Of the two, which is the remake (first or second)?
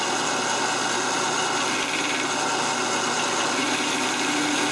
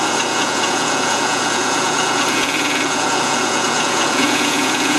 second